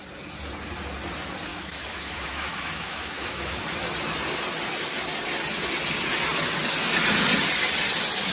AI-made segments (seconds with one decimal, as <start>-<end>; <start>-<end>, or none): 1.5-3.6